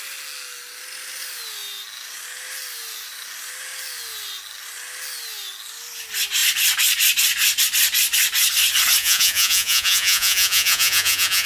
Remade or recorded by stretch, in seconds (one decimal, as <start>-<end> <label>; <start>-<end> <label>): 0.0-9.0 recorded; 9.0-11.5 remade